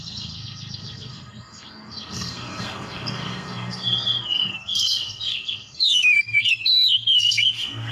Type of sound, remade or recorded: remade